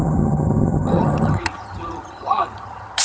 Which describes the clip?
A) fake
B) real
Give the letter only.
A